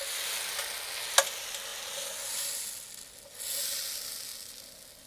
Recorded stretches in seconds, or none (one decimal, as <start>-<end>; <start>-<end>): 0.0-5.1